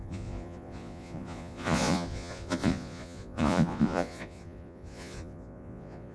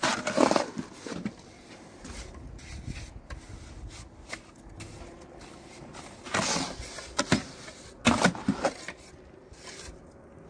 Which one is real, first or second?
second